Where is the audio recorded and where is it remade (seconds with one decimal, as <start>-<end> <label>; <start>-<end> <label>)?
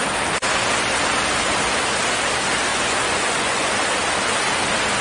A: 0.0-2.7 recorded; 2.7-3.7 remade; 3.7-5.0 recorded